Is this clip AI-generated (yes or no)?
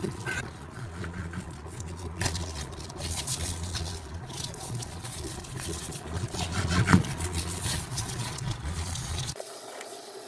yes